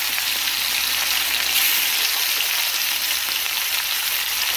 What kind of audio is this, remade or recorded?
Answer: recorded